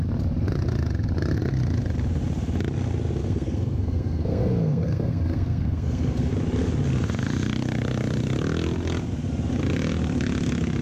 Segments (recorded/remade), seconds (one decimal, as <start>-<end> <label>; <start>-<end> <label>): 0.0-3.2 recorded; 3.2-6.3 remade; 6.3-10.8 recorded